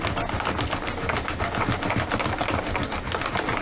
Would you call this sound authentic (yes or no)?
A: yes